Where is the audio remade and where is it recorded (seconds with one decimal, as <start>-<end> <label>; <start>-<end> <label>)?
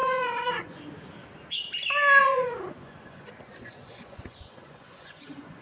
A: 0.0-0.8 remade; 0.8-2.2 recorded; 2.2-5.6 remade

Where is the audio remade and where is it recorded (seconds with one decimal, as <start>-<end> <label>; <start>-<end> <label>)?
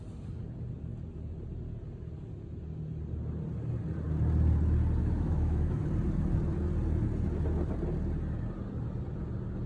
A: 0.0-5.0 recorded; 5.0-5.8 remade; 5.8-9.7 recorded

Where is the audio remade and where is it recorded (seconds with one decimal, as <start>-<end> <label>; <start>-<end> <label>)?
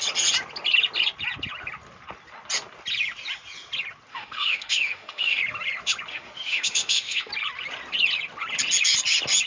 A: 0.0-4.1 recorded; 4.1-5.4 remade; 5.4-6.1 recorded; 6.1-7.3 remade; 7.3-9.5 recorded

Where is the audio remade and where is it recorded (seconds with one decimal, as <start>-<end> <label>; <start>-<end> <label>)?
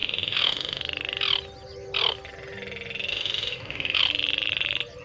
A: 0.0-0.8 remade; 0.8-3.1 recorded; 3.1-4.0 remade; 4.0-5.0 recorded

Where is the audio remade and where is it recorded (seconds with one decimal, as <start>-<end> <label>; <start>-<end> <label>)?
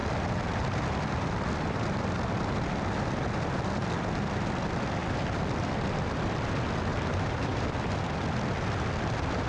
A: 0.0-6.9 recorded; 6.9-7.6 remade; 7.6-9.5 recorded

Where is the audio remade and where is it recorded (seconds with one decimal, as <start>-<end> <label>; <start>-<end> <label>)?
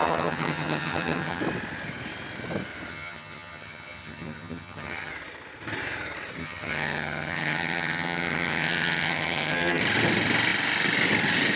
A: 0.0-1.4 remade; 1.4-2.9 recorded; 2.9-5.1 remade; 5.1-6.4 recorded; 6.4-9.8 remade; 9.8-11.6 recorded